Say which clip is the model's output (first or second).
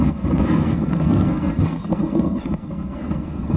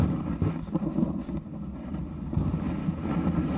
first